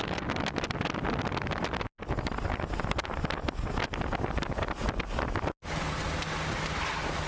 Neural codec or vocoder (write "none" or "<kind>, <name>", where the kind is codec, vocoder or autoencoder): none